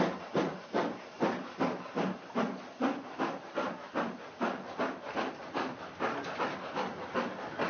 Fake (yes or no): no